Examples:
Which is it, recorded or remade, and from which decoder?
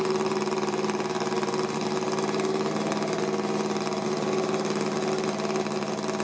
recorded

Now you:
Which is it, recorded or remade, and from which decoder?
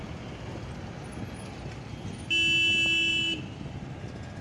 recorded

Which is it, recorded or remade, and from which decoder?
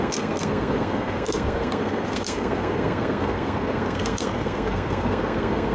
remade, codec, SNAC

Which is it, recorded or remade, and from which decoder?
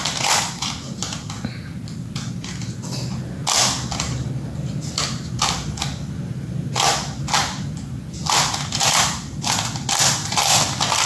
recorded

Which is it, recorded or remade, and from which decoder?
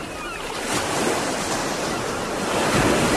recorded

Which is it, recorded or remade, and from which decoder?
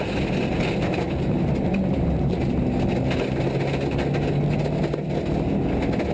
recorded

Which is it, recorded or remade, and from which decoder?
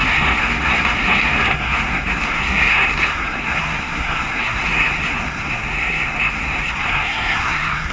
remade, codec, SNAC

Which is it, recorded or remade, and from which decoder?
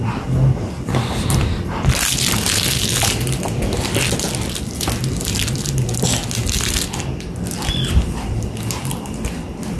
recorded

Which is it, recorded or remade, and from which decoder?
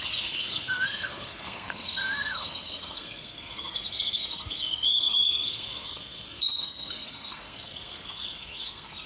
remade, codec, SNAC